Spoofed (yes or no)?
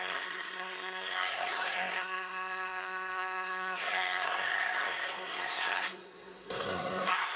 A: yes